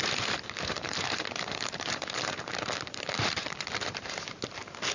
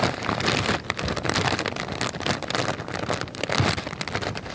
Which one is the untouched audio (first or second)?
second